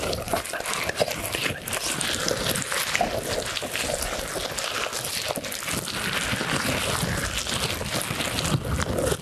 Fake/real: real